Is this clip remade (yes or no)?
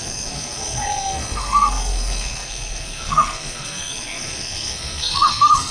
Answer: yes